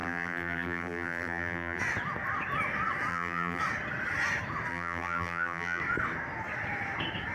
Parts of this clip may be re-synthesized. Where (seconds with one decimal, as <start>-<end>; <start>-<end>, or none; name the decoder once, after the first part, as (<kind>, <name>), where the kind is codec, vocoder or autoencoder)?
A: 0.0-1.8 (vocoder, BigVGAN v2); 3.1-3.6; 4.7-5.8